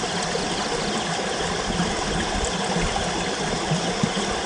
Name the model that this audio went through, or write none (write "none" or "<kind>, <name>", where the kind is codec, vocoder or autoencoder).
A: none